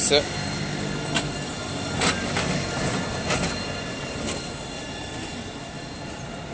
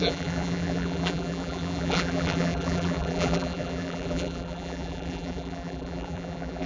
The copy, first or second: second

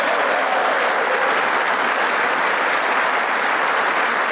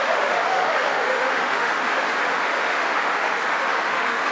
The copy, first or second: second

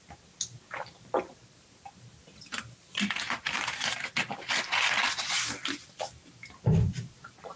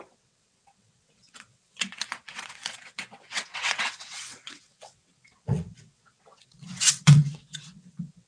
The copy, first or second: second